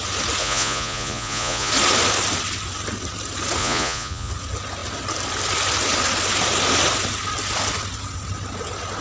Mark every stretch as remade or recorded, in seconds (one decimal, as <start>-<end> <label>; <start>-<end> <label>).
0.0-0.4 recorded; 0.4-1.7 remade; 1.7-3.6 recorded; 3.6-4.3 remade; 4.3-9.0 recorded